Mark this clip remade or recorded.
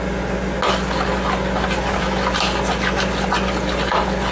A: recorded